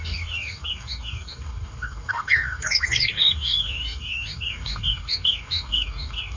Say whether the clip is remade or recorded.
remade